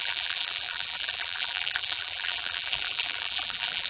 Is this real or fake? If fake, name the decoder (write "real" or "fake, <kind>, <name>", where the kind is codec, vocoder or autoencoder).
fake, vocoder, BigVGAN v2